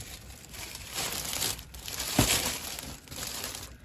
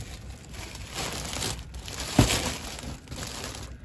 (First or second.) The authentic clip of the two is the second